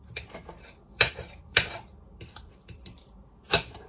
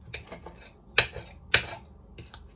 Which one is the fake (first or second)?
first